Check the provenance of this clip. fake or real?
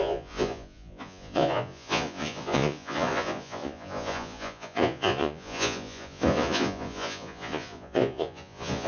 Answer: fake